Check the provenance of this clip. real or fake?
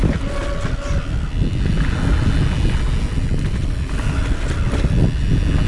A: real